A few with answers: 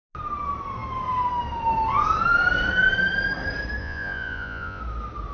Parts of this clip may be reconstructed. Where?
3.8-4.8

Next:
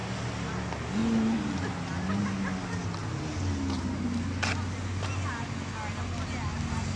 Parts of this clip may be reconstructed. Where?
none

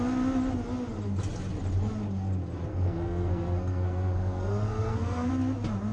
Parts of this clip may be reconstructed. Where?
2.7-5.3

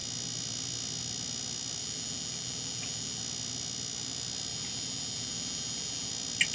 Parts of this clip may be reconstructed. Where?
1.8-3.2; 4.5-6.1

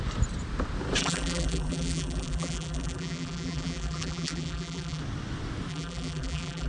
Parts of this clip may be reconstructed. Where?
1.0-5.0; 5.7-6.7

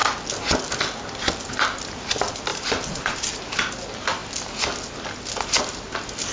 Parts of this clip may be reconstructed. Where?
2.5-3.7

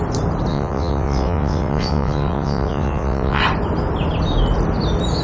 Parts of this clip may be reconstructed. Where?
0.5-3.4